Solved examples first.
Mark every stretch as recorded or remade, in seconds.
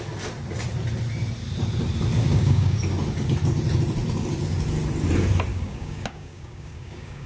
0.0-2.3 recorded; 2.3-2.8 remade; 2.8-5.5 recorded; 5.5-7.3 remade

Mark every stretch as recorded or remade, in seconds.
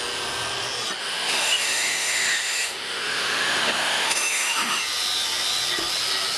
0.0-1.0 recorded; 1.0-4.8 remade; 4.8-6.4 recorded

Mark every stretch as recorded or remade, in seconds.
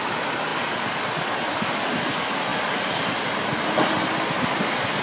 0.0-5.0 recorded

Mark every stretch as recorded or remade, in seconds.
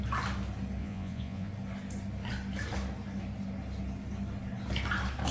0.0-0.8 recorded; 0.8-1.5 remade; 1.5-5.3 recorded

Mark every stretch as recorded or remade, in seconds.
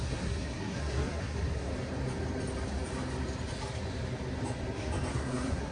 0.0-1.7 remade; 1.7-5.1 recorded; 5.1-5.7 remade